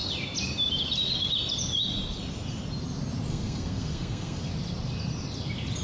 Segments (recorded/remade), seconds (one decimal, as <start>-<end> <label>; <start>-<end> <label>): 0.0-3.3 recorded; 3.3-4.5 remade; 4.5-5.8 recorded